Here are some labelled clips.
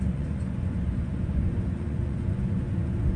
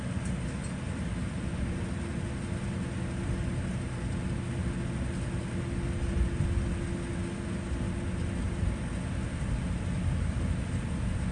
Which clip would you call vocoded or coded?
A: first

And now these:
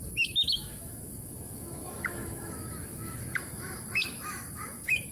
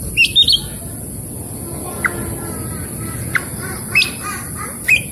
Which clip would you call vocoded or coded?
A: first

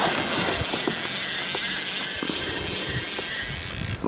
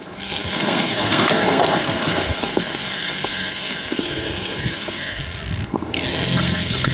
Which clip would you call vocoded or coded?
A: second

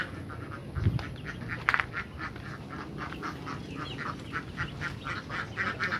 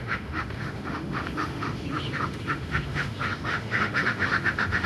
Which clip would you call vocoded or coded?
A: second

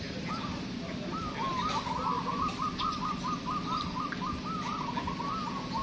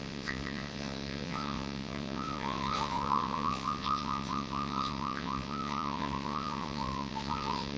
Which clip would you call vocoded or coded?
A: second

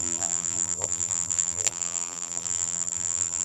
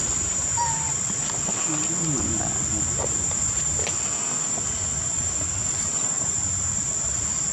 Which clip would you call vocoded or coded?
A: first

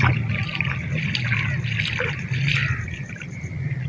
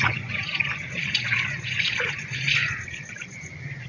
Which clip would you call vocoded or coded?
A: second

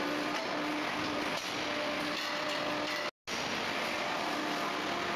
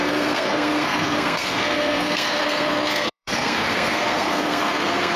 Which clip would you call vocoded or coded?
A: second